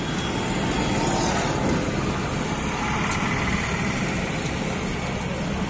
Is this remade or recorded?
recorded